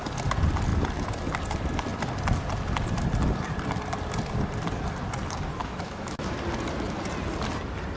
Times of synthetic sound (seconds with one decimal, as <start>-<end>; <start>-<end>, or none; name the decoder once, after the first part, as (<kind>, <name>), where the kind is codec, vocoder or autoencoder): 5.6-6.3 (autoencoder, DAC-VAE)